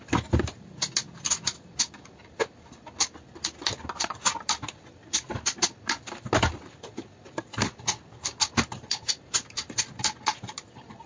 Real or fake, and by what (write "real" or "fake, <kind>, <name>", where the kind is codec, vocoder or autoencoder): real